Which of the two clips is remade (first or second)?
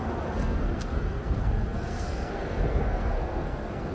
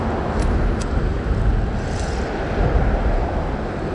first